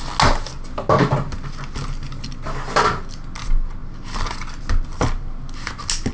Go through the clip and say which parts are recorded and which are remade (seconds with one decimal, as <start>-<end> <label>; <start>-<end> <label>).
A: 0.0-6.1 recorded